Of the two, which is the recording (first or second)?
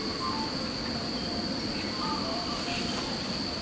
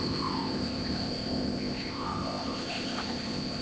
first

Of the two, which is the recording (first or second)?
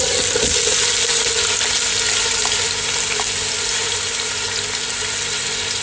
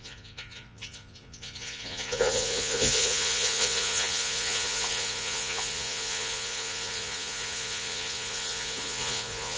first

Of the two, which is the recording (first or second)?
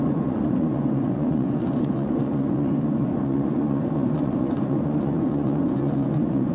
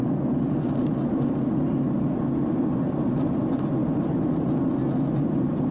second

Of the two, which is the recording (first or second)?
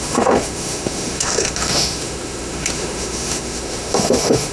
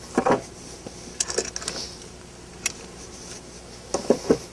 second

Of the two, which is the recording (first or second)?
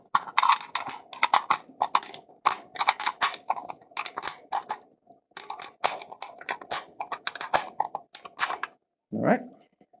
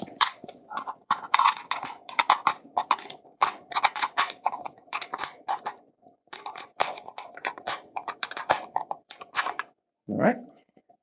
first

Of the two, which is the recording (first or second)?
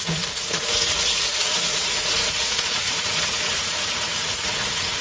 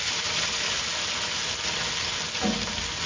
second